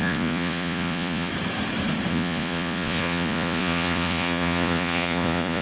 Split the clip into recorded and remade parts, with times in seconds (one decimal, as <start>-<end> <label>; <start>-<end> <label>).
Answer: 0.0-1.3 remade; 1.3-2.1 recorded; 2.1-5.6 remade